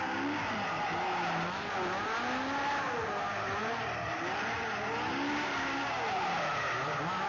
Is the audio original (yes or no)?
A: yes